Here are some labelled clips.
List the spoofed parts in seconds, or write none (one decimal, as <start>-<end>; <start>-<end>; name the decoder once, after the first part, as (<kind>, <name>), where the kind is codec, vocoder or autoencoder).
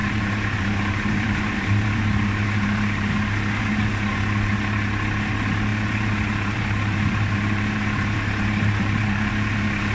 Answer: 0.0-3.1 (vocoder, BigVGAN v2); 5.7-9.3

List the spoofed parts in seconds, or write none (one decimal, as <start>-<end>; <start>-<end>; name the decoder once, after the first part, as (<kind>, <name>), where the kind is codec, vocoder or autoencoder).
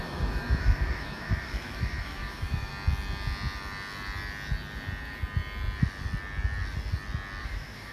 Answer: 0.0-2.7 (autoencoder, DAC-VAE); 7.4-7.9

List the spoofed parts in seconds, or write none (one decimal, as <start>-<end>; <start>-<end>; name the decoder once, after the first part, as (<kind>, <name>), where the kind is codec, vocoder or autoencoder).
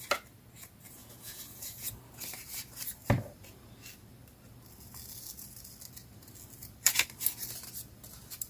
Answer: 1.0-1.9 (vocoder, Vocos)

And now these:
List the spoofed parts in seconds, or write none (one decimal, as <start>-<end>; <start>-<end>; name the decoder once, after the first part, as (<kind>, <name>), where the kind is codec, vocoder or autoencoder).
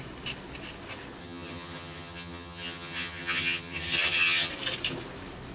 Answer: 1.2-4.5 (vocoder, HiFi-GAN)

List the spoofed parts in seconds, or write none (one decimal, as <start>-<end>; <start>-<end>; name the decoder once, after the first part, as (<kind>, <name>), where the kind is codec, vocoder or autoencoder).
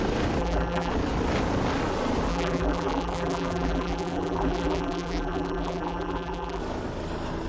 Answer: 0.4-0.9 (vocoder, BigVGAN v2); 2.3-6.6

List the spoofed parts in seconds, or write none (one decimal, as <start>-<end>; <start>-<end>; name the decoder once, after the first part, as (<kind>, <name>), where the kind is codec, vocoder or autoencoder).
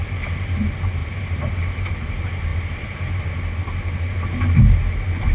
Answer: 2.5-3.2 (vocoder, BigVGAN v2)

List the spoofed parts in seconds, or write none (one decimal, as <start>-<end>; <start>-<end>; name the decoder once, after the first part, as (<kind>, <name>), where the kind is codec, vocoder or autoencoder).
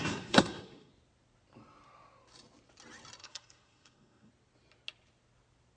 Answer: 0.0-0.9 (codec, SNAC); 3.2-4.3